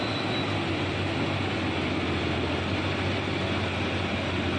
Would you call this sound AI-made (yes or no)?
no